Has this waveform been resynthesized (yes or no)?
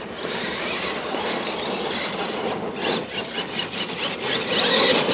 no